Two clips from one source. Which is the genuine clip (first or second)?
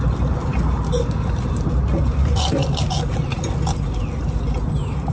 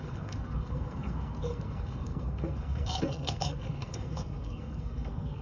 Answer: first